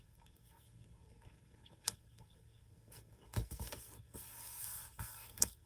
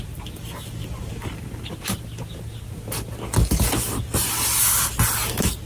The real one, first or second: second